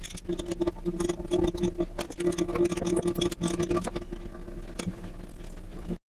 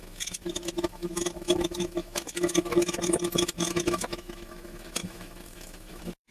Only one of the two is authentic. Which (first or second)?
first